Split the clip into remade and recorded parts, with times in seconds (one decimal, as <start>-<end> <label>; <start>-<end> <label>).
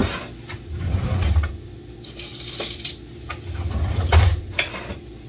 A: 0.0-5.3 recorded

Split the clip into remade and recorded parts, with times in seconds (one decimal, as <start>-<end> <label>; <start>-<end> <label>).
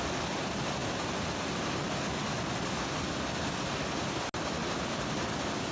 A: 0.0-5.7 recorded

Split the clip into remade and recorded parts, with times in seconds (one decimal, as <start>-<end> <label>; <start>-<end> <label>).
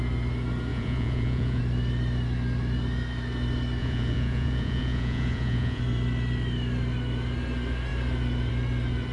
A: 0.0-0.7 recorded; 0.7-1.6 remade; 1.6-3.8 recorded; 3.8-5.8 remade; 5.8-9.1 recorded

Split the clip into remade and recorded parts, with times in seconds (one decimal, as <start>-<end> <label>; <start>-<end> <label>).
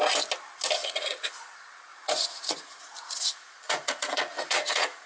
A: 0.0-0.8 recorded; 0.8-1.5 remade; 1.5-1.9 recorded; 1.9-5.1 remade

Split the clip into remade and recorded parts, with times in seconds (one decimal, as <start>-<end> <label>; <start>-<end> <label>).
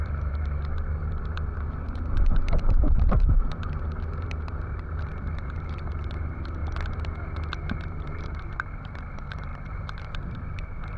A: 0.0-6.6 remade; 6.6-7.7 recorded; 7.7-11.0 remade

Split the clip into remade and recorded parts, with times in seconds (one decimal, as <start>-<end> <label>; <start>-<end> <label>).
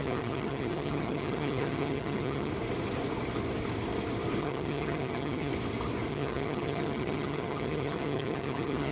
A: 0.0-2.5 remade; 2.5-4.4 recorded; 4.4-5.5 remade; 5.5-6.1 recorded; 6.1-8.9 remade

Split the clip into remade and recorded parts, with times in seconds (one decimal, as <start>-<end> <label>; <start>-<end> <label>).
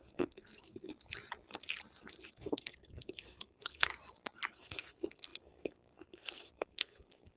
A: 0.0-0.9 remade; 0.9-2.3 recorded; 2.3-3.9 remade; 3.9-4.5 recorded; 4.5-7.4 remade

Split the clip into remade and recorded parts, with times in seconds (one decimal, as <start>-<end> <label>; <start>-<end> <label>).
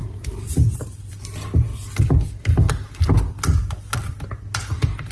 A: 0.0-1.2 remade; 1.2-5.1 recorded